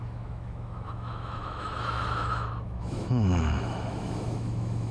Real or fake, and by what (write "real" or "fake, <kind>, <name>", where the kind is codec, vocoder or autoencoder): fake, autoencoder, DAC-VAE